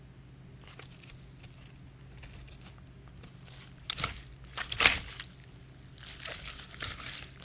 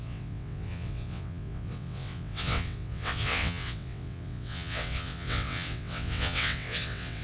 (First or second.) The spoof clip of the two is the second